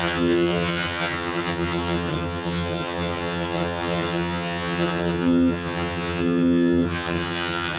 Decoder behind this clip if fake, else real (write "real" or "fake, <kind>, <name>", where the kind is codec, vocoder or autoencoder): fake, vocoder, HiFi-GAN